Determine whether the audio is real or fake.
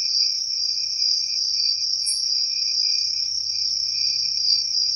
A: real